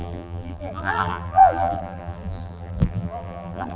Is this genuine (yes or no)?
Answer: no